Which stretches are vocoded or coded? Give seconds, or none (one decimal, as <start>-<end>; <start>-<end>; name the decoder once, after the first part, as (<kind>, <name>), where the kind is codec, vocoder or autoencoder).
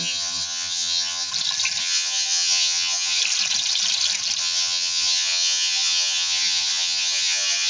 0.0-1.3 (vocoder, HiFi-GAN); 1.8-3.2; 4.4-7.7